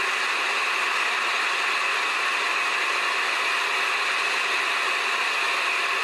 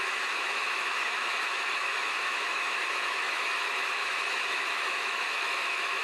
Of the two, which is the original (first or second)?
first